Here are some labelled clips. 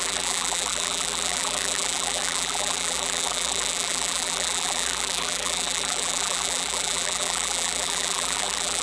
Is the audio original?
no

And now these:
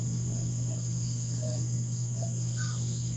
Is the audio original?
no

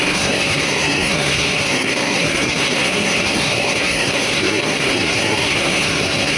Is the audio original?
no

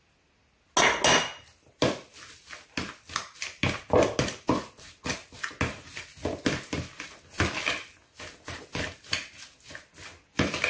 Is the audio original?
yes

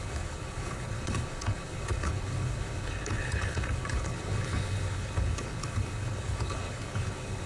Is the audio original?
no